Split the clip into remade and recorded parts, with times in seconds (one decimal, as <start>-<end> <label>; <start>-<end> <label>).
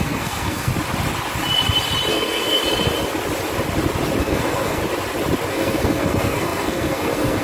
0.0-0.7 remade; 0.7-2.1 recorded; 2.1-2.6 remade; 2.6-4.2 recorded; 4.2-4.8 remade; 4.8-5.5 recorded; 5.5-7.4 remade